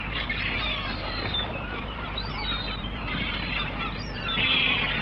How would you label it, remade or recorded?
remade